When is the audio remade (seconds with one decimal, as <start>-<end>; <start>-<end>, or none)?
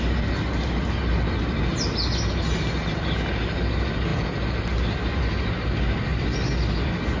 none